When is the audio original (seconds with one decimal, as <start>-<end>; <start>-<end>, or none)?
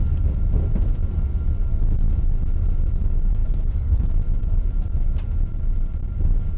0.0-3.4; 4.1-6.6